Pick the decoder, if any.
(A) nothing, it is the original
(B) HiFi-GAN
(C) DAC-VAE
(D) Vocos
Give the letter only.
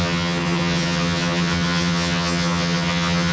B